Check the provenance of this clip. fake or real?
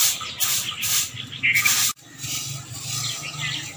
real